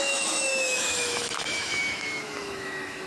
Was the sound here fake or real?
fake